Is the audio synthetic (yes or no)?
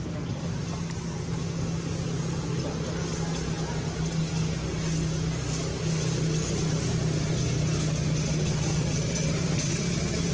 no